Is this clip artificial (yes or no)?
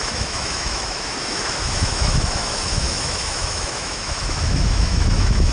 yes